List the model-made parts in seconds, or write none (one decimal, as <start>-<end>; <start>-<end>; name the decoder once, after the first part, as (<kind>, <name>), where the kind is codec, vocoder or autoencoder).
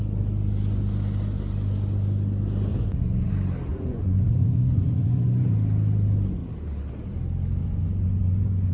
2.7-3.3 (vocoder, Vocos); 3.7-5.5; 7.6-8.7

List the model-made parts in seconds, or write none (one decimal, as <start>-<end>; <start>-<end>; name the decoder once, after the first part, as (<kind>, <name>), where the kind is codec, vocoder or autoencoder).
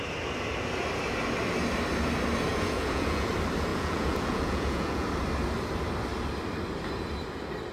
2.5-3.3 (vocoder, Vocos); 3.7-5.1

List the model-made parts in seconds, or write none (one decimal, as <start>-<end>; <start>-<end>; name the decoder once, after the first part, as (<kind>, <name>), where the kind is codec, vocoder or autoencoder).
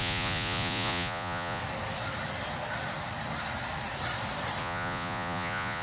0.0-1.6 (vocoder, Vocos); 4.6-5.8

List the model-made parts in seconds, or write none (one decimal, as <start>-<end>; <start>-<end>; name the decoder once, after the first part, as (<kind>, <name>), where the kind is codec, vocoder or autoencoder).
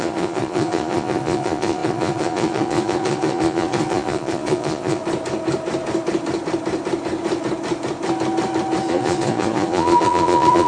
0.0-5.0 (vocoder, Vocos); 8.9-10.7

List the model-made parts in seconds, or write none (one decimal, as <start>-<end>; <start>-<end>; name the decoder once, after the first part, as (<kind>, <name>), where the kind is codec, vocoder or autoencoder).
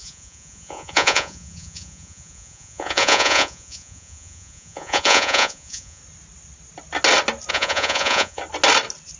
0.0-6.0 (vocoder, Vocos); 7.5-8.4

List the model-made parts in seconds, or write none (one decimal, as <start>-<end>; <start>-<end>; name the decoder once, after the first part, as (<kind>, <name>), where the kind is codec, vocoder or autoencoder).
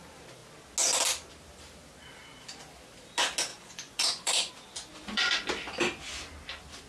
3.5-4.5 (vocoder, Vocos); 4.9-5.4